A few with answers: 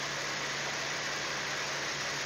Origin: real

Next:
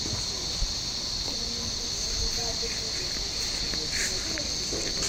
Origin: real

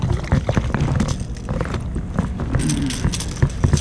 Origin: real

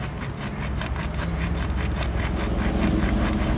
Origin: real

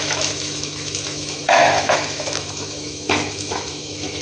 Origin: fake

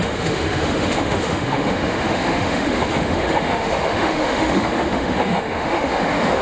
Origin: fake